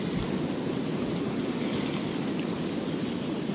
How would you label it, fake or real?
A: real